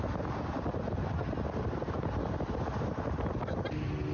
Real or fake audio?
real